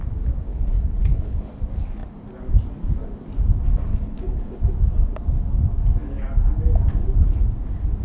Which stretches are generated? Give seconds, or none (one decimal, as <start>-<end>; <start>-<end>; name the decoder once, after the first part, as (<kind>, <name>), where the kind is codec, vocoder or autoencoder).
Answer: 0.5-1.5 (codec, HILCodec); 3.9-4.6